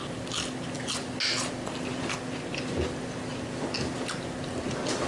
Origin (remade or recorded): recorded